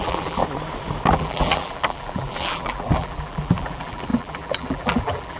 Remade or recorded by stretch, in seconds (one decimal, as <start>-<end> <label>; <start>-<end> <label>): 0.0-0.4 remade; 0.4-1.1 recorded; 1.1-5.4 remade